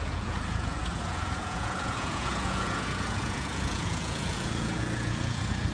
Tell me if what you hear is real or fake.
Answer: fake